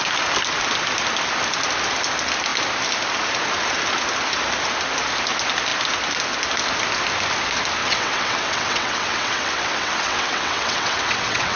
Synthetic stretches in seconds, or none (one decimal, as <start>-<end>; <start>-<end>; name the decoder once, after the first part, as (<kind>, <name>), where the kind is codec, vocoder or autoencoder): 7.8-11.6 (vocoder, WaveNeXt)